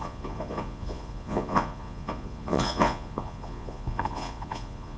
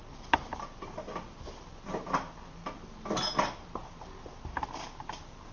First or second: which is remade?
first